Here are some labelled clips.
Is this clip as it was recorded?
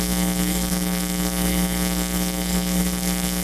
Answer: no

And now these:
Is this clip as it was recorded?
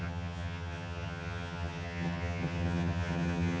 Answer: no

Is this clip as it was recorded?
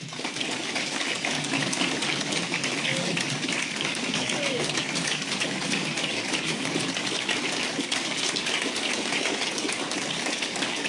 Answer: no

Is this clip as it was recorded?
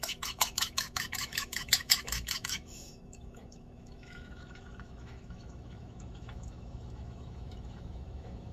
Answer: no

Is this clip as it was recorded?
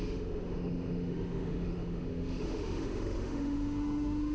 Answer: no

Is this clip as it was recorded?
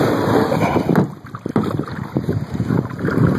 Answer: yes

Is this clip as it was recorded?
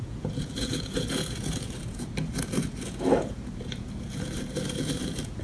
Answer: no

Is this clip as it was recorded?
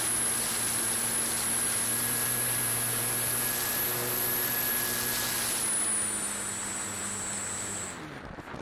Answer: yes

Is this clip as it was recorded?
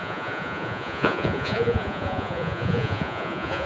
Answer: no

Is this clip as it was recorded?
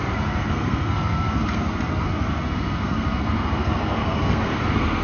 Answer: no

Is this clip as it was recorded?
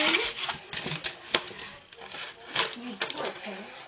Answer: yes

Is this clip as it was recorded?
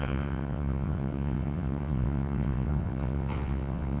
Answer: no